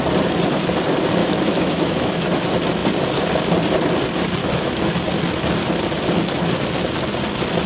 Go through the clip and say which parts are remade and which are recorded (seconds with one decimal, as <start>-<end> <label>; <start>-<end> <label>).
0.0-1.2 recorded; 1.2-2.4 remade; 2.4-4.4 recorded; 4.4-4.9 remade; 4.9-7.7 recorded